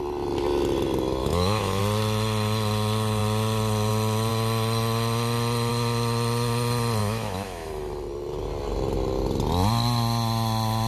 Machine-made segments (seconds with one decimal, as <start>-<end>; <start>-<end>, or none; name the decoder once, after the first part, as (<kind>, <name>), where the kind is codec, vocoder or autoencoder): 1.2-1.8 (autoencoder, DAC-VAE); 7.0-7.7